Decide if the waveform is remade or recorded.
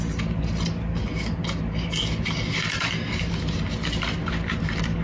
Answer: recorded